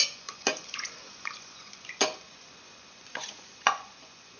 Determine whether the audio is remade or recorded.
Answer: remade